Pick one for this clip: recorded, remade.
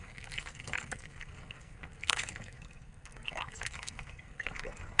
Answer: remade